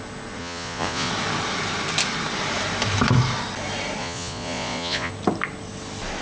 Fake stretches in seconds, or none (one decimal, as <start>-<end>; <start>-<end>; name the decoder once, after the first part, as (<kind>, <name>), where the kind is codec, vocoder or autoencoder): 0.4-1.1 (vocoder, Vocos); 4.0-5.1